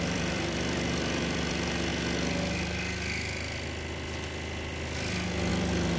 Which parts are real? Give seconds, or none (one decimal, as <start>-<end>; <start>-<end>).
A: 1.9-5.5